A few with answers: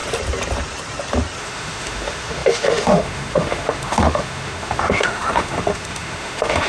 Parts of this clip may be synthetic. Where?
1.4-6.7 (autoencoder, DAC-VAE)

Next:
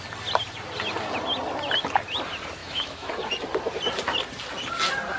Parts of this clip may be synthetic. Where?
2.6-3.1 (autoencoder, DAC-VAE)

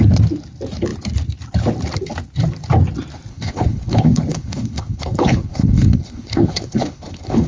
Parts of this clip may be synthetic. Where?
3.3-7.5 (codec, HILCodec)

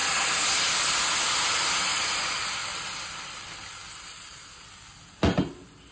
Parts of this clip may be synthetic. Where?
none

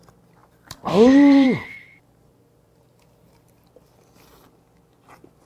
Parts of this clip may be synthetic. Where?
0.4-3.7 (vocoder, BigVGAN v2)

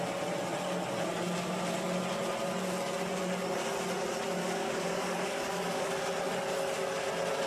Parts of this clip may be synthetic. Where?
4.4-5.9 (codec, DAC)

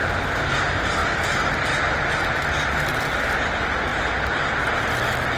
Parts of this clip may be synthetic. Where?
none